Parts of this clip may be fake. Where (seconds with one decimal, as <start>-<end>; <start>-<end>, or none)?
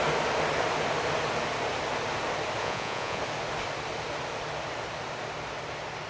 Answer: 2.6-3.2